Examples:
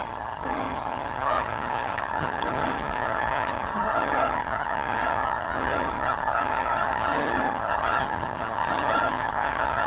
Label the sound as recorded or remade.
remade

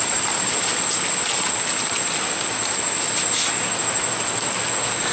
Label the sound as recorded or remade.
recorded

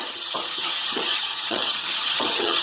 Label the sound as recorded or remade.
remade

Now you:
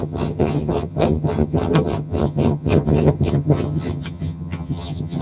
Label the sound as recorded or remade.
remade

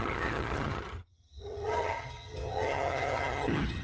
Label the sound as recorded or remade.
remade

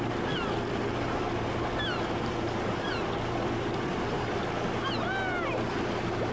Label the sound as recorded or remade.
recorded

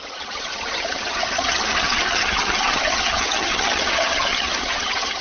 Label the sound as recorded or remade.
remade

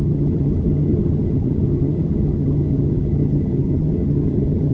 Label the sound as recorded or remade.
remade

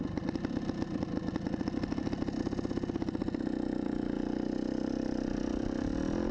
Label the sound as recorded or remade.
recorded